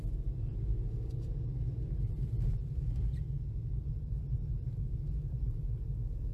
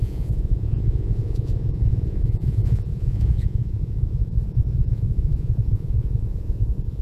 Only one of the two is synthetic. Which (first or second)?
second